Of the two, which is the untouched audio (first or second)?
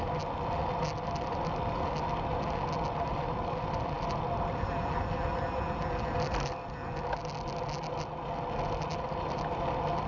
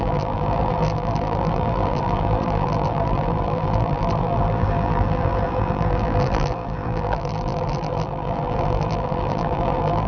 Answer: first